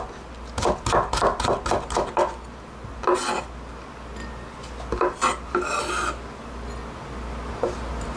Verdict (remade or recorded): recorded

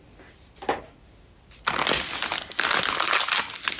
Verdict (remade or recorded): recorded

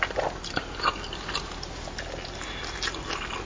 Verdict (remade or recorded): recorded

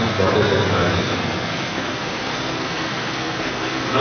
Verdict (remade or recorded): remade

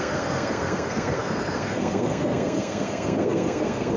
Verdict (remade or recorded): remade